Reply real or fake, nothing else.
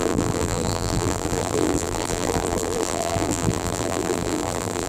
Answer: fake